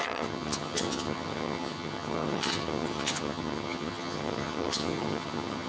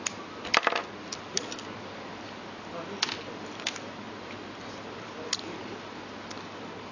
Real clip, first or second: second